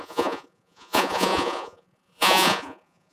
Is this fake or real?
fake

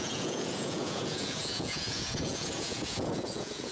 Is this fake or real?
fake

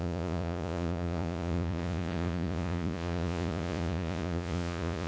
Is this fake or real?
fake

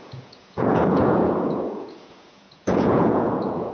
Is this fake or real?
fake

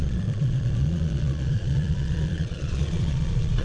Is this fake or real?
fake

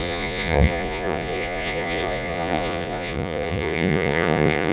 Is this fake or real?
fake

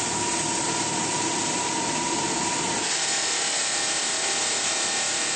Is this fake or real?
real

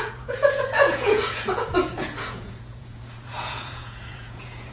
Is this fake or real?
fake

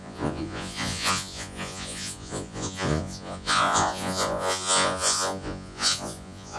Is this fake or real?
fake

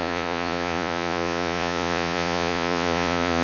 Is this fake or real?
fake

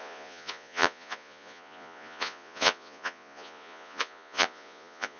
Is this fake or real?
fake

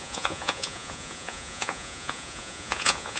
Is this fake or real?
fake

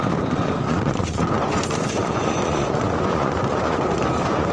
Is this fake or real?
fake